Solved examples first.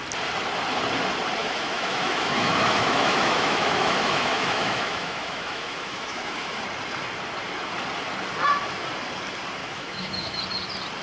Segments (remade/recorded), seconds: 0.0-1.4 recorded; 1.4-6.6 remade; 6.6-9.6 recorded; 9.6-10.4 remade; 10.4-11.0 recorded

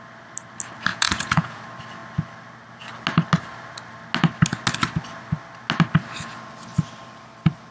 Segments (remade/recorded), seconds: 0.0-0.9 recorded; 0.9-1.6 remade; 1.6-7.7 recorded

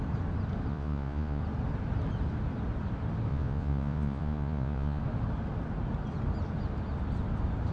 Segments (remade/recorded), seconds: 0.0-0.7 recorded; 0.7-1.4 remade; 1.4-3.3 recorded; 3.3-5.0 remade; 5.0-7.7 recorded

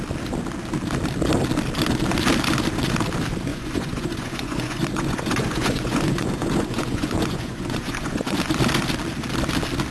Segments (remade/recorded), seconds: 0.0-3.5 recorded; 3.5-8.4 remade; 8.4-9.9 recorded

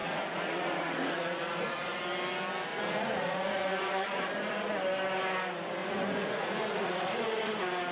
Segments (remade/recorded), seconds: 0.0-2.0 remade; 2.0-2.7 recorded; 2.7-4.7 remade; 4.7-5.8 recorded; 5.8-7.5 remade; 7.5-7.9 recorded

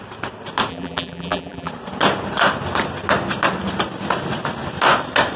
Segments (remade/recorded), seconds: 0.0-0.7 recorded; 0.7-1.7 remade; 1.7-5.4 recorded

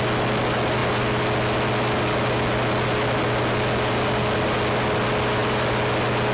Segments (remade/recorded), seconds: 0.0-6.3 recorded

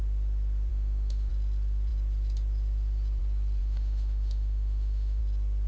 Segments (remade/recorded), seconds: 0.0-0.7 recorded; 0.7-1.3 remade; 1.3-3.6 recorded; 3.6-5.2 remade; 5.2-5.7 recorded